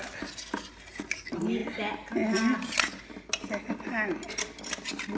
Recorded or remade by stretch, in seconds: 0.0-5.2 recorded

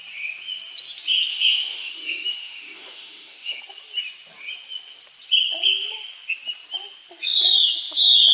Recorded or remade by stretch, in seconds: 0.0-1.3 recorded; 1.3-3.6 remade; 3.6-8.3 recorded

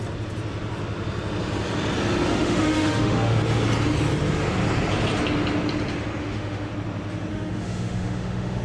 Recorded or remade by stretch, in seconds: 0.0-2.3 recorded; 2.3-3.4 remade; 3.4-6.2 recorded; 6.2-6.7 remade; 6.7-7.3 recorded; 7.3-8.6 remade

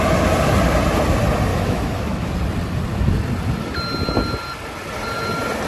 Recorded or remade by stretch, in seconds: 0.0-1.5 recorded; 1.5-2.3 remade; 2.3-5.7 recorded

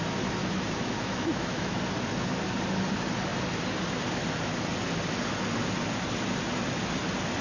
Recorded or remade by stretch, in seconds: 0.0-0.4 recorded; 0.4-1.8 remade; 1.8-7.4 recorded